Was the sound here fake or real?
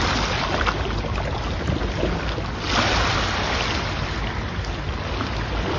real